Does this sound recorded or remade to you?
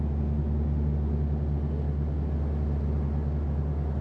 recorded